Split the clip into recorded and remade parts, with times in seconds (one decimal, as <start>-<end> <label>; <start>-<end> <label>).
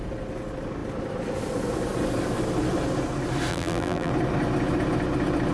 0.0-3.5 recorded; 3.5-4.1 remade; 4.1-5.5 recorded